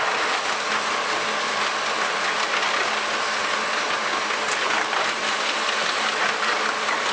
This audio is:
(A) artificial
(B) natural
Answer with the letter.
B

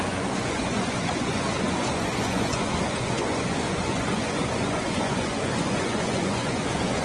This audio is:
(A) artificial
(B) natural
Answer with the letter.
A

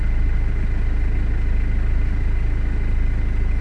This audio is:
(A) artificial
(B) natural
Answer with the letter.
B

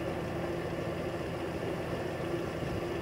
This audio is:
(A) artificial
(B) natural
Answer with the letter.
B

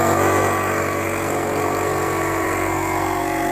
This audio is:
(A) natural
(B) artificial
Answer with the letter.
B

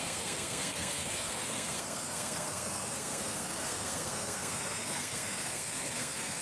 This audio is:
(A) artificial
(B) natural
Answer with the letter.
A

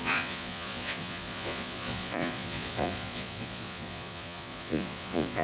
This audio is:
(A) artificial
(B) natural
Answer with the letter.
A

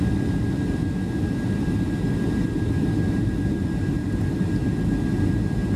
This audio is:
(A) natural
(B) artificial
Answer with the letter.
A